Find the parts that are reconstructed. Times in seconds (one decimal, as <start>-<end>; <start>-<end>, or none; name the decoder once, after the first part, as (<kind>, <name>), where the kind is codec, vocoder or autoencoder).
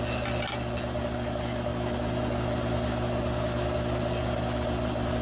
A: none